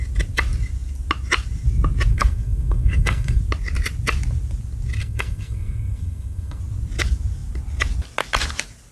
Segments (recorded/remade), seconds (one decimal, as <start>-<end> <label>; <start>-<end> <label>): 0.0-2.1 recorded; 2.1-3.4 remade; 3.4-5.0 recorded; 5.0-6.6 remade; 6.6-8.9 recorded